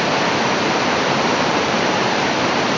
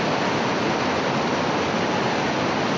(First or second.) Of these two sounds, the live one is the second